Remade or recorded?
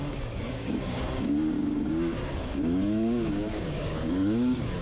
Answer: remade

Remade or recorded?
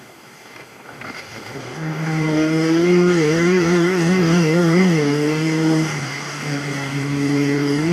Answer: remade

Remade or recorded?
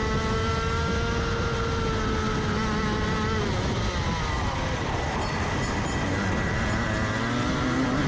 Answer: recorded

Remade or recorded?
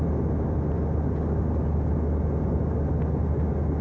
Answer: recorded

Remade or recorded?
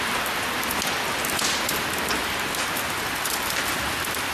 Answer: recorded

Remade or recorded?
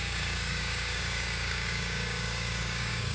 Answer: remade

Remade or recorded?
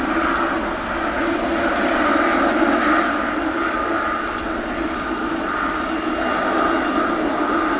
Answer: recorded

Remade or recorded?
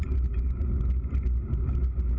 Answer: recorded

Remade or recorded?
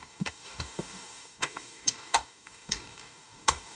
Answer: remade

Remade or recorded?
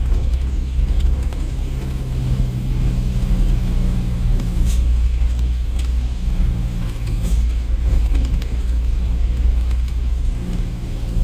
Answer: remade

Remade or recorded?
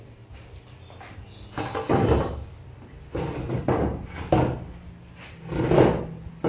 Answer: recorded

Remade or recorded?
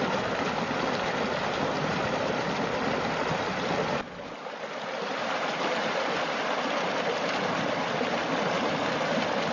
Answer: recorded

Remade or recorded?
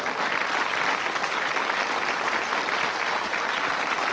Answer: recorded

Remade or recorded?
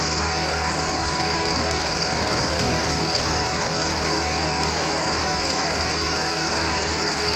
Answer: remade